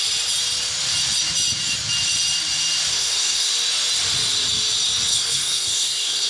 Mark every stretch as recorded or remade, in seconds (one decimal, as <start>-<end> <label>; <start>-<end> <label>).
0.0-2.9 recorded; 2.9-3.5 remade; 3.5-5.1 recorded; 5.1-6.3 remade